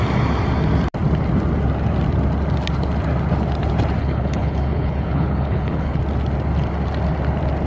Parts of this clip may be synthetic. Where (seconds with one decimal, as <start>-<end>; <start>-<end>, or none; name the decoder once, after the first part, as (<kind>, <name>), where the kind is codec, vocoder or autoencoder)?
4.0-6.0 (codec, HILCodec)